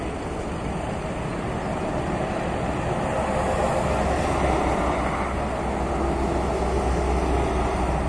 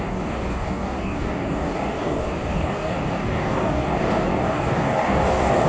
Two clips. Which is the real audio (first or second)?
first